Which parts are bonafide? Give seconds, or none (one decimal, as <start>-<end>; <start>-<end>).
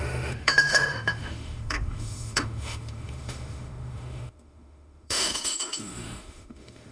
none